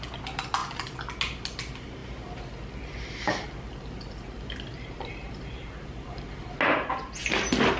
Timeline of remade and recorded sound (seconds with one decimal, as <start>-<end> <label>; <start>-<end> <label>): 0.0-4.7 recorded; 4.7-6.4 remade; 6.4-7.8 recorded